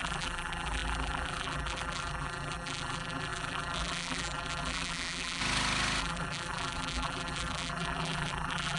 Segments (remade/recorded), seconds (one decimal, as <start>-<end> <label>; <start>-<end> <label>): 0.0-5.4 remade; 5.4-6.0 recorded; 6.0-8.8 remade